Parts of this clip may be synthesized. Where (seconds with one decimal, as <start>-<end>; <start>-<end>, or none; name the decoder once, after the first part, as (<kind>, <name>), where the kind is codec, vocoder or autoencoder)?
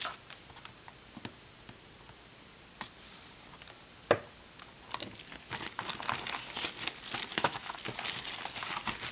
7.3-7.8 (autoencoder, DAC-VAE)